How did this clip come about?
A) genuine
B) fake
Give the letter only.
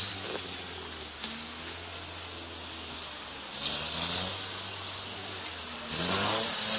A